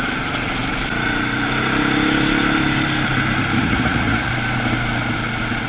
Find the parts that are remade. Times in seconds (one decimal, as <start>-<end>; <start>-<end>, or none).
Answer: 3.6-4.3